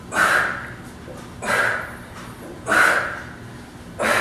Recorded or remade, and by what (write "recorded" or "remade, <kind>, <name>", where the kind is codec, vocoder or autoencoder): recorded